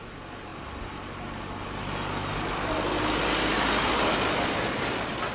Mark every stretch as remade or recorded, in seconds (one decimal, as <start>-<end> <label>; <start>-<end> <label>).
0.0-5.3 recorded